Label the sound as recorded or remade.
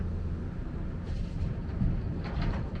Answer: recorded